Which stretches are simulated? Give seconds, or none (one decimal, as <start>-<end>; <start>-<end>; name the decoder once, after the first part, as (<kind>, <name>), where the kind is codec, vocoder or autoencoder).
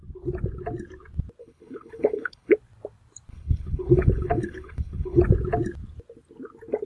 1.4-2.5 (codec, HILCodec); 3.3-5.2